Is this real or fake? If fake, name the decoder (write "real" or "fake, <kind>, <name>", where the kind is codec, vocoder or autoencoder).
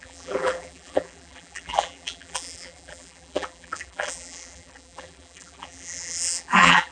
fake, vocoder, BigVGAN v2